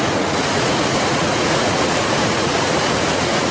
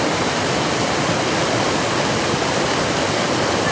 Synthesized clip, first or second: first